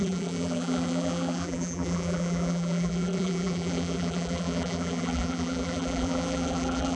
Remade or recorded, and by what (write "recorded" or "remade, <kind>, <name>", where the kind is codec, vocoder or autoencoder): remade, vocoder, BigVGAN v2